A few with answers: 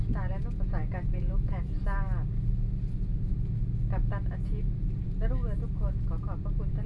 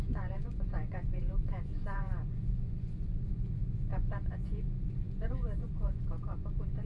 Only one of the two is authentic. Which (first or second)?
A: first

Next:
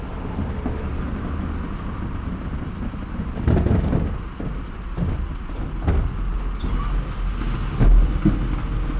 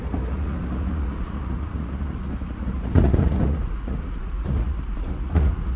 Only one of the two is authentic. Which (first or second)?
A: first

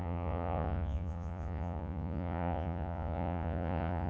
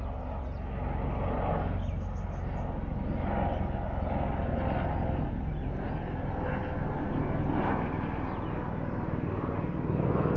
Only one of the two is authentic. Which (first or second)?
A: second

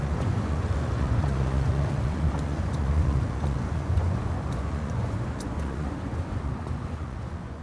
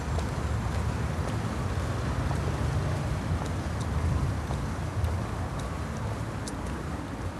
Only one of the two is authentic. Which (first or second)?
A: second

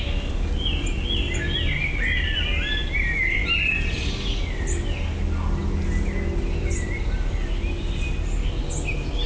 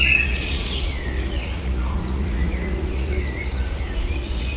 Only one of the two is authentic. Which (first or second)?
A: first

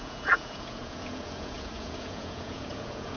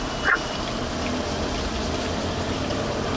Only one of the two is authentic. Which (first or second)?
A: second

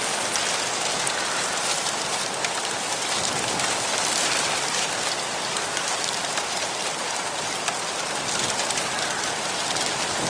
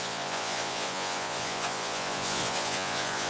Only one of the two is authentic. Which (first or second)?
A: first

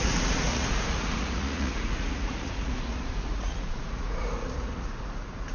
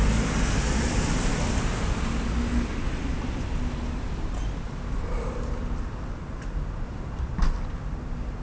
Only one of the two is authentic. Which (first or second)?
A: second